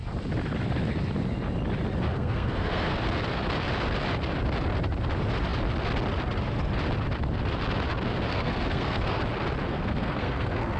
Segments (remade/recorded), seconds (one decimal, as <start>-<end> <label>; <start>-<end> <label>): 0.0-2.1 recorded; 2.1-3.0 remade; 3.0-8.3 recorded; 8.3-9.2 remade; 9.2-9.7 recorded; 9.7-10.8 remade

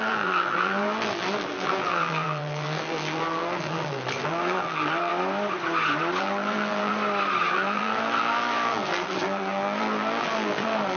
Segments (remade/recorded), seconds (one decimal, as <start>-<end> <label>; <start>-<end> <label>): 0.0-5.1 remade; 5.1-6.2 recorded; 6.2-6.9 remade; 6.9-7.5 recorded; 7.5-11.0 remade

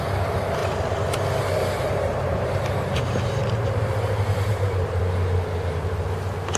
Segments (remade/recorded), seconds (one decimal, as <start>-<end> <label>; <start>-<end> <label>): 0.0-0.6 recorded; 0.6-3.4 remade; 3.4-4.5 recorded; 4.5-5.0 remade; 5.0-6.6 recorded

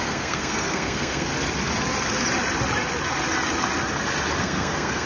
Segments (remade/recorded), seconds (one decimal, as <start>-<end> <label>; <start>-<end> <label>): 0.0-1.3 remade; 1.3-4.4 recorded; 4.4-5.1 remade

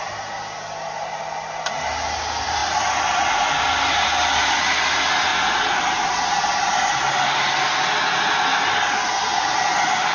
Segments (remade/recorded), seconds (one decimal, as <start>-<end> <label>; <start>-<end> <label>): 0.0-10.1 recorded

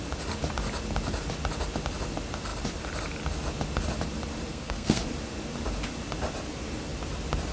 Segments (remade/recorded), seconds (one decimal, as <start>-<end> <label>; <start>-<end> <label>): 0.0-4.5 recorded; 4.5-5.0 remade; 5.0-7.5 recorded

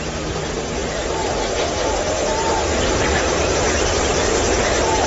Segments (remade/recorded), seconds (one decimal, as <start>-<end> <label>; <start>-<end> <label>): 0.0-5.1 recorded